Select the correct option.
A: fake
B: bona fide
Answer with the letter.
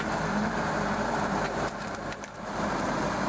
A